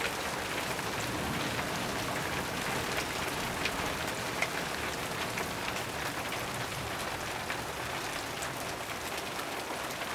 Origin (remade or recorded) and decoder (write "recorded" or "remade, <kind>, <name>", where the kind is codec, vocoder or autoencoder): recorded